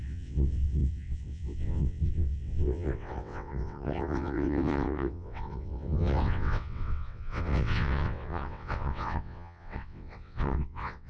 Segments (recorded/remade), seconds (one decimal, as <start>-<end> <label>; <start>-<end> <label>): 0.0-11.1 remade